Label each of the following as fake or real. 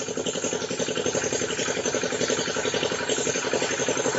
real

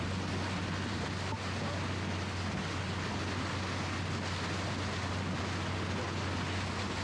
real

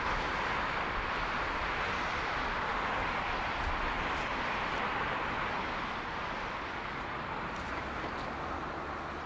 fake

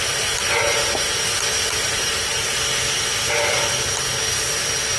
fake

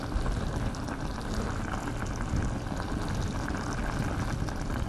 real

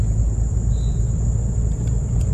real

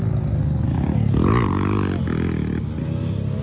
real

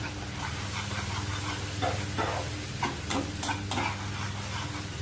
real